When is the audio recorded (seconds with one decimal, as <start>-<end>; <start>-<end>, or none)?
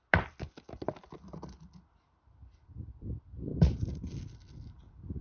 0.0-3.5; 4.0-5.2